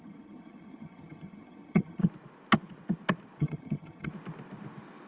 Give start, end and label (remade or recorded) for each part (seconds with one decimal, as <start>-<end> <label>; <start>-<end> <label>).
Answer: 0.0-2.0 remade; 2.0-3.4 recorded; 3.4-4.1 remade; 4.1-5.1 recorded